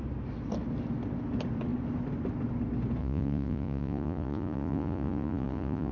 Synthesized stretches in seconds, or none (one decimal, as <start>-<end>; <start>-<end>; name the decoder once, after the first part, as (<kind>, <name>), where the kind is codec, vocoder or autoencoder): 3.0-5.9 (vocoder, Vocos)